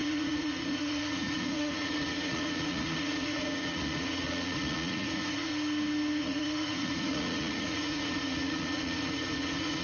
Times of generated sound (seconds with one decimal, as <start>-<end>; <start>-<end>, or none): 0.0-5.5; 6.2-9.8